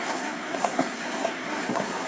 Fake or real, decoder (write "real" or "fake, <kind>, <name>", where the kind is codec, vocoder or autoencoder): fake, codec, SNAC